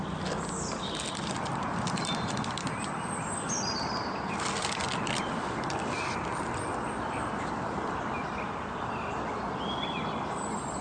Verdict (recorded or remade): recorded